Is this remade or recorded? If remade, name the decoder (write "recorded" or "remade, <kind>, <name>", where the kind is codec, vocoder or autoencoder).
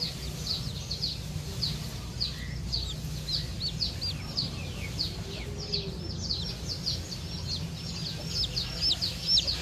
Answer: recorded